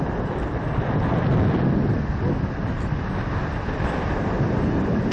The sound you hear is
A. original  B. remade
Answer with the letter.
A